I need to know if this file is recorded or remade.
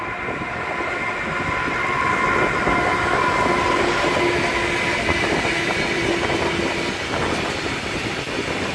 recorded